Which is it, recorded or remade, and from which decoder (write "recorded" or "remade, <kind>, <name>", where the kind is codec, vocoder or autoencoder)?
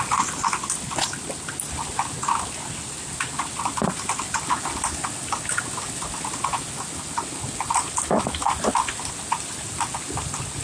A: recorded